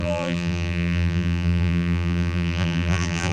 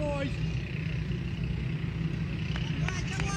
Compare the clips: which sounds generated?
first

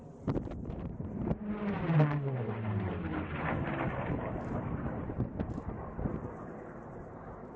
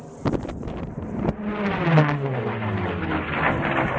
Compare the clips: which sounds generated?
first